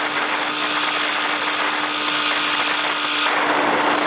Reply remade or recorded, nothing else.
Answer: recorded